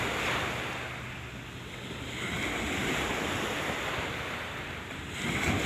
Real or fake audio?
real